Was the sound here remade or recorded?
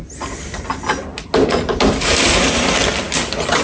recorded